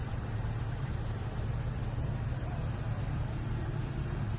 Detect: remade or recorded remade